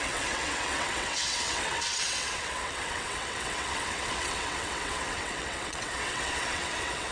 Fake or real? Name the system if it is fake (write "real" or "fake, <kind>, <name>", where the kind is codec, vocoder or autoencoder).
fake, vocoder, WaveNeXt